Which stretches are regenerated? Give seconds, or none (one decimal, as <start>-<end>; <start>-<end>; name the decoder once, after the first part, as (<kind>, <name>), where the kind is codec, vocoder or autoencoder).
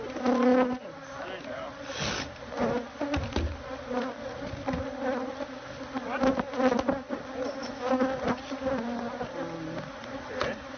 7.6-8.2 (autoencoder, DAC-VAE)